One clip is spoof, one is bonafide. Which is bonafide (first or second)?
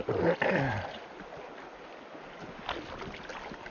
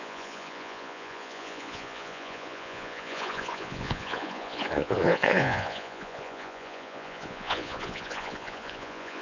first